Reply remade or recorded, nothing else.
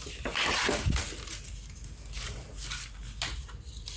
recorded